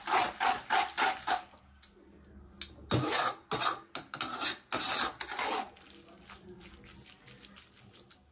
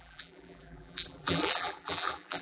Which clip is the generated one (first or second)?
second